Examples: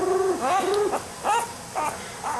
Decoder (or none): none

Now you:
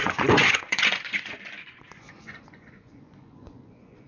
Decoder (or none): vocoder, Vocos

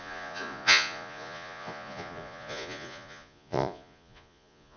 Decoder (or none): vocoder, Vocos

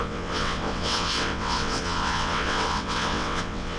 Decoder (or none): vocoder, WaveNeXt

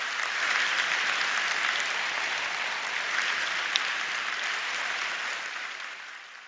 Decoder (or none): none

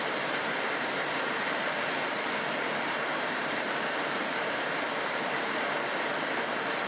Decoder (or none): vocoder, BigVGAN v2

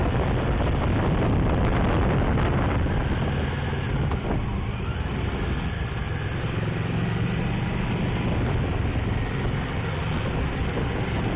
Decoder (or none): none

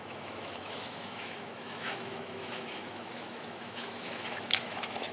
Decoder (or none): autoencoder, DAC-VAE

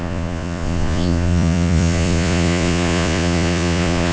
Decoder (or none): vocoder, Vocos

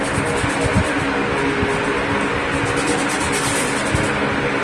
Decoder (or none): none